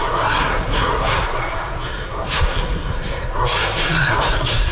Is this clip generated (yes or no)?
yes